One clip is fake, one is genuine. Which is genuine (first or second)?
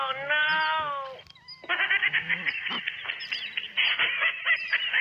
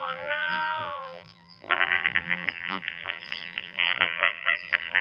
first